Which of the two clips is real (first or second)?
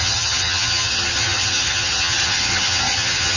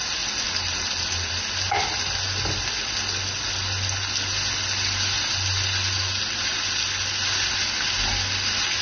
second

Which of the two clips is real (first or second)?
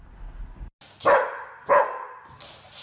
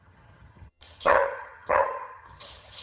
first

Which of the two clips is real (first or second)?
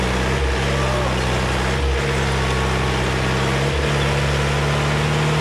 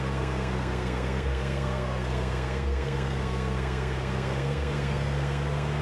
first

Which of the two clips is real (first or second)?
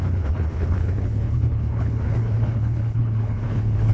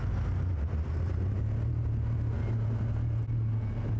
second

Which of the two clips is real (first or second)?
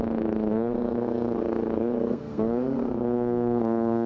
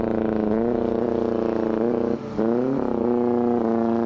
second